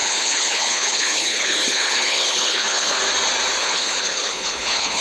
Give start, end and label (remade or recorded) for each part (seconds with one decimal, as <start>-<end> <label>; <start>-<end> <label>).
0.0-3.0 remade; 3.0-3.6 recorded; 3.6-5.0 remade